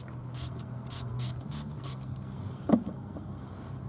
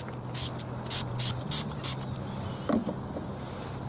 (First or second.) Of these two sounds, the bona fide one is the second